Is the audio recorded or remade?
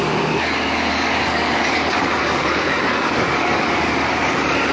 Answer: remade